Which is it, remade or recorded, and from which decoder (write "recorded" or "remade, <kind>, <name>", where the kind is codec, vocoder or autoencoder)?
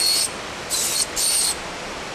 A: recorded